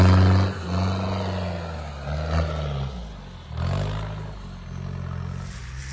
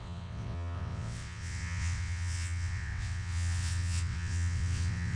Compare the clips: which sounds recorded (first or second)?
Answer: first